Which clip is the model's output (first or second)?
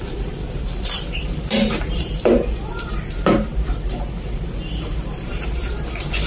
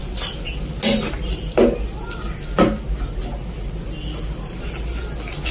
first